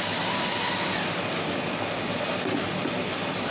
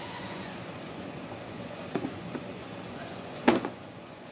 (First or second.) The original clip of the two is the first